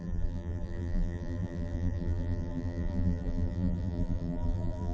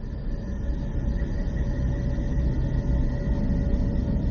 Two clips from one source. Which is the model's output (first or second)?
first